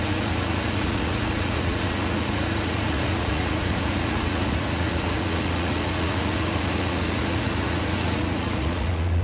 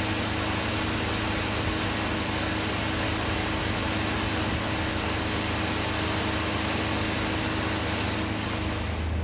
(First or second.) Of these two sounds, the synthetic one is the first